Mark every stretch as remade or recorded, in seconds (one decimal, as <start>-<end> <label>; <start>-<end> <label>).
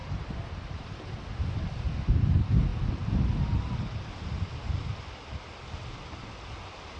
0.0-1.2 remade; 1.2-7.0 recorded